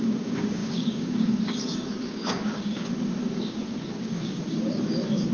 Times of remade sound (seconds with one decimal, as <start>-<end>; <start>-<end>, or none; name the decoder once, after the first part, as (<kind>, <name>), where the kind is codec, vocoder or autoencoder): 0.0-5.3 (codec, DAC)